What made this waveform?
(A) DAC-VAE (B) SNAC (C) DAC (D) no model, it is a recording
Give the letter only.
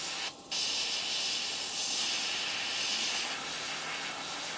D